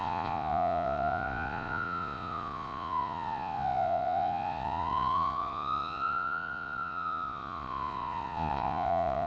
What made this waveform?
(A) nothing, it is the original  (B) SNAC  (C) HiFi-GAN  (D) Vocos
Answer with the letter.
D